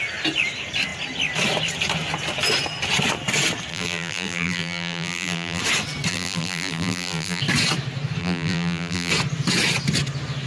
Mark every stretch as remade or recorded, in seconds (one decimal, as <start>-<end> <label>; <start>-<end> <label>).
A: 0.0-3.7 recorded; 3.7-5.6 remade; 5.6-6.1 recorded; 6.1-7.4 remade; 7.4-8.2 recorded; 8.2-9.1 remade; 9.1-10.5 recorded